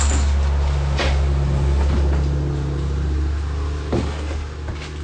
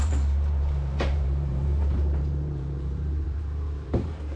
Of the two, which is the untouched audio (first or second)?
first